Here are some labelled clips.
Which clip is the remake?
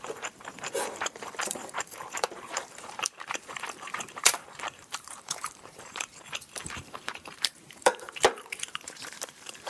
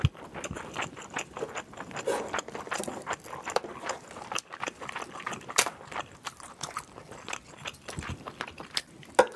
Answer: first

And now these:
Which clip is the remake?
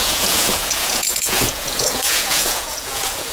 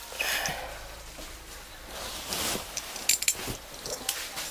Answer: first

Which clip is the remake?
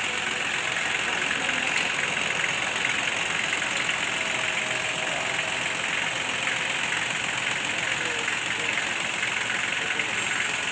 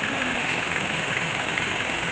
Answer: second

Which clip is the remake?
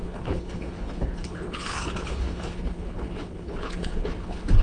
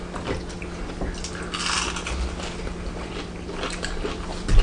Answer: first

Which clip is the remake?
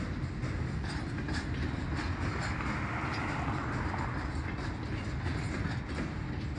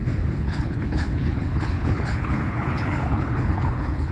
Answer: second